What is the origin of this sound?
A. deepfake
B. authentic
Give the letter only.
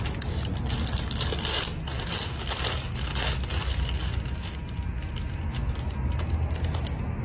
B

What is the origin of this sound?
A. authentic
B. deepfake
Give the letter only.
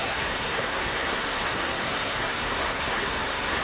B